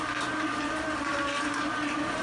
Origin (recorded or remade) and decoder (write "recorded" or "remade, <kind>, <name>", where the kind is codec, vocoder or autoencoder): remade, vocoder, BigVGAN v2